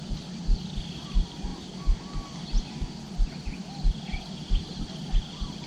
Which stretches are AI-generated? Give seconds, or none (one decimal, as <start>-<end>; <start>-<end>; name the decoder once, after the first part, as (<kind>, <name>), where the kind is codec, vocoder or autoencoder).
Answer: none